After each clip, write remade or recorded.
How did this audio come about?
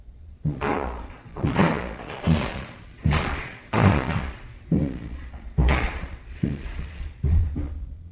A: remade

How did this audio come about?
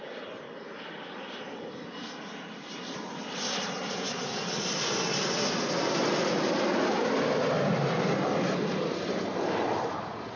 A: recorded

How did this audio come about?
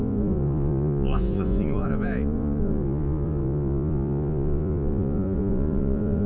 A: remade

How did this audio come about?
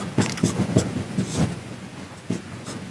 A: remade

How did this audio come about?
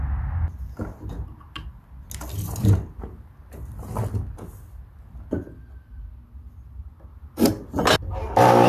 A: recorded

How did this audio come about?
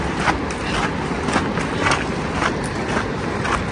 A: recorded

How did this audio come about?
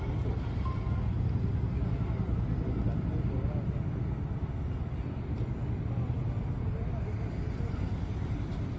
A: recorded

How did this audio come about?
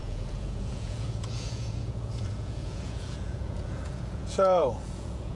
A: remade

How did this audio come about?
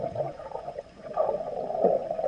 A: remade